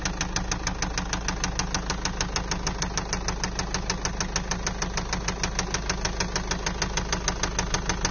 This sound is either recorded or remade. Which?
recorded